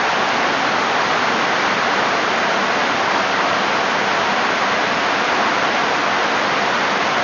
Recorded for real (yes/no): yes